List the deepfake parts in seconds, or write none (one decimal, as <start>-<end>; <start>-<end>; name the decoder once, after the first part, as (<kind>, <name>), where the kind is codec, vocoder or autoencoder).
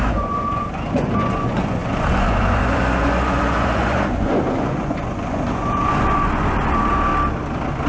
0.0-7.1 (vocoder, Vocos)